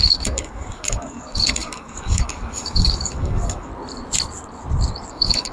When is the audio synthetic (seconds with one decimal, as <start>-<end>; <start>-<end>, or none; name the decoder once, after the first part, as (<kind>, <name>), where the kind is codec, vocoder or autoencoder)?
0.0-3.7 (codec, DAC); 5.1-5.5